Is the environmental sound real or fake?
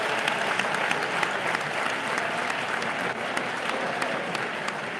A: real